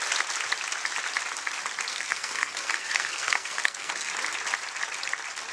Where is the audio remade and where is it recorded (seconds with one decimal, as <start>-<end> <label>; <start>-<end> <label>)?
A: 0.0-1.9 recorded; 1.9-4.1 remade; 4.1-5.5 recorded